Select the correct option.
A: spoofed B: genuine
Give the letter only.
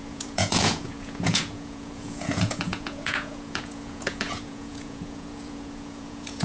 A